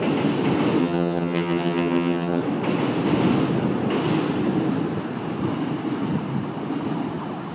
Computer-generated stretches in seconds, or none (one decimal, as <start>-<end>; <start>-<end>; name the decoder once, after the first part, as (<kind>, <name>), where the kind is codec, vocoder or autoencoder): 0.8-2.4 (vocoder, HiFi-GAN)